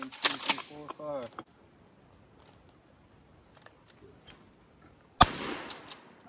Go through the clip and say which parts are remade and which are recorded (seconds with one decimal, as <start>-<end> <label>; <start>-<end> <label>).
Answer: 0.0-6.3 recorded